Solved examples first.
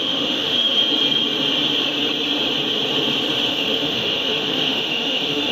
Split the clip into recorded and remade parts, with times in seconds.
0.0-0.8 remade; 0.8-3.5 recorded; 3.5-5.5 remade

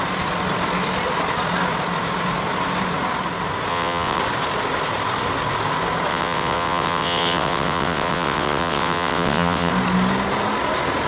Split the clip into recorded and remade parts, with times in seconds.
0.0-3.7 recorded; 3.7-4.2 remade; 4.2-6.1 recorded; 6.1-9.7 remade; 9.7-11.1 recorded

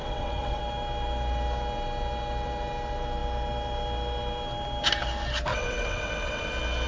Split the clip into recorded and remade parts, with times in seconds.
0.0-0.6 remade; 0.6-5.5 recorded; 5.5-6.5 remade; 6.5-6.9 recorded

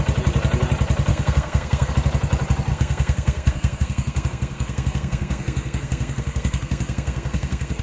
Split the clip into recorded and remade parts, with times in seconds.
0.0-1.1 recorded; 1.1-1.9 remade; 1.9-2.7 recorded; 2.7-7.8 remade

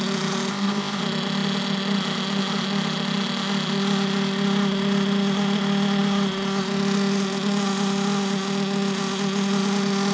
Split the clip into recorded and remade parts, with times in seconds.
0.0-0.5 recorded; 0.5-1.0 remade; 1.0-10.1 recorded

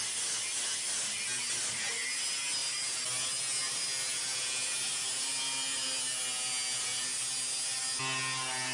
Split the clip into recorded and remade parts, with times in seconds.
0.0-8.7 recorded

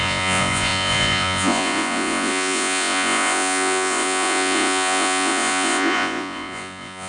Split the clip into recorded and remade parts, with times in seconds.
0.0-7.1 remade